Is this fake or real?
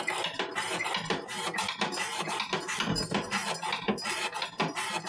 real